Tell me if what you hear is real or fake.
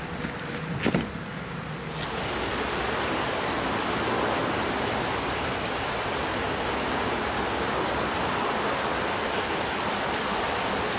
real